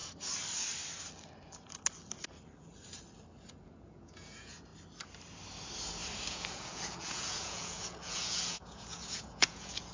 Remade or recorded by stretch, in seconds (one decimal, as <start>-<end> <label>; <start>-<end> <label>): 0.0-3.5 recorded; 3.5-4.7 remade; 4.7-6.3 recorded; 6.3-9.9 remade